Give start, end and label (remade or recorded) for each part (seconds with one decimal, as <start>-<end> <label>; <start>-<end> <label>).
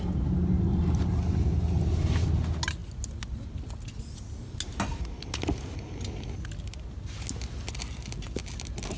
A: 0.0-9.0 recorded